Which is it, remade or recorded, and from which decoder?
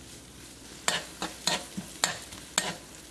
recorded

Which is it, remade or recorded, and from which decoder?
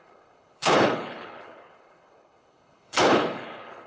remade, codec, HILCodec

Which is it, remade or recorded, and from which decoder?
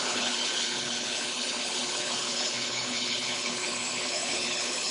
remade, codec, HILCodec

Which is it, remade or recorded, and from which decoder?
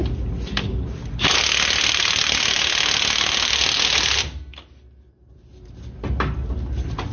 recorded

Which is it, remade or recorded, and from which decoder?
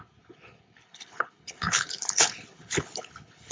remade, codec, HILCodec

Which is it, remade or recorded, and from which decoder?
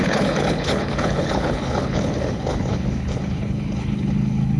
remade, codec, HILCodec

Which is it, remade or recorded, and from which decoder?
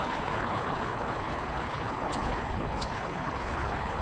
remade, codec, HILCodec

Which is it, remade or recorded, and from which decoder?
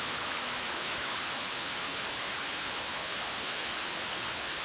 remade, codec, HILCodec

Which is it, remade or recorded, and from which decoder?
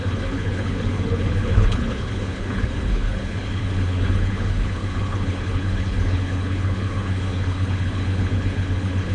remade, codec, HILCodec